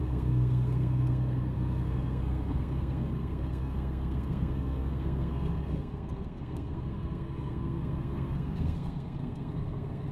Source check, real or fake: fake